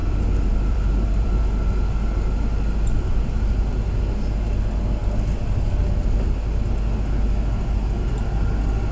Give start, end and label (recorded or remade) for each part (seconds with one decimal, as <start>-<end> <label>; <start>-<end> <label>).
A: 0.0-1.4 remade; 1.4-8.9 recorded